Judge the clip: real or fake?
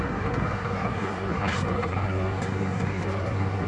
fake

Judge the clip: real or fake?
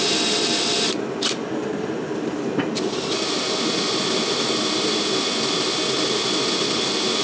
real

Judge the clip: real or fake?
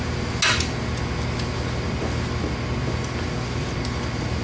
real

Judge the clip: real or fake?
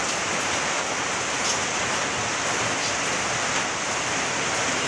real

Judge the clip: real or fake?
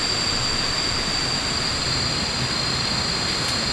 real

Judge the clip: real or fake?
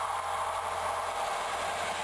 real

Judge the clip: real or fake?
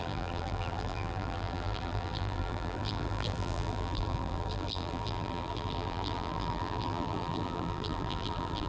fake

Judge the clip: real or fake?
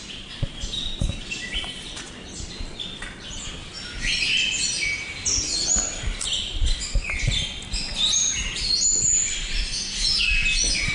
real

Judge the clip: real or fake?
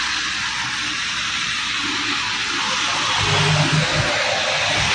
real